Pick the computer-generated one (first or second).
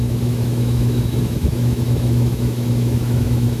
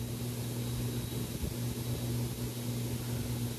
first